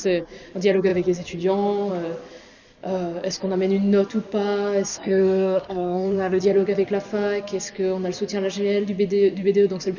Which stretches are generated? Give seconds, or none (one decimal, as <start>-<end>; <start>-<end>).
4.9-6.4